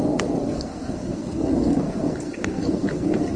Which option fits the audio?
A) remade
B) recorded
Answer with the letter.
A